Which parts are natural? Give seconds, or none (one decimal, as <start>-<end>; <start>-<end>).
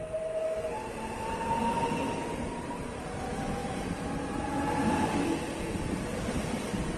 0.0-7.0